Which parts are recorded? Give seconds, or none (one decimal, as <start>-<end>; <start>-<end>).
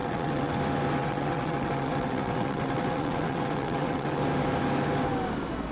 0.6-1.0; 4.2-5.7